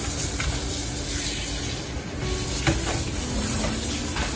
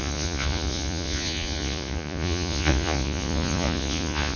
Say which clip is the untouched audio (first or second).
first